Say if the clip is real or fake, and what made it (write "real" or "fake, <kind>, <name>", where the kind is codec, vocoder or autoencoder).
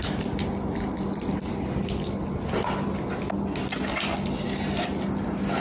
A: real